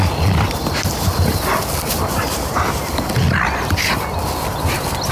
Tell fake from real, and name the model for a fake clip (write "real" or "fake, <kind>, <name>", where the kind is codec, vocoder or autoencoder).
real